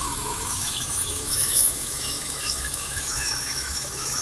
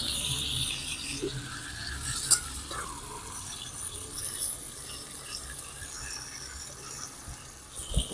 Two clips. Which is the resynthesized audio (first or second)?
first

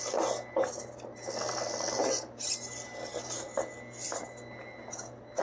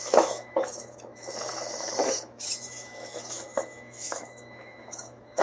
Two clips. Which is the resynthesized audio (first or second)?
second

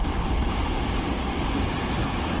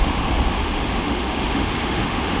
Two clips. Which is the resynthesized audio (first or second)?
second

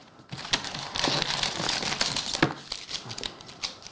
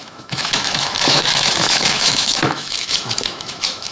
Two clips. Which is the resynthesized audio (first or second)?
second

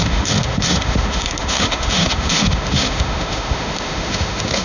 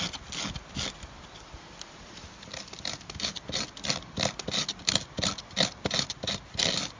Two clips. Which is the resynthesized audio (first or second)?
first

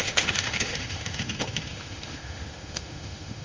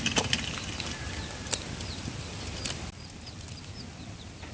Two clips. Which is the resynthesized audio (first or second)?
first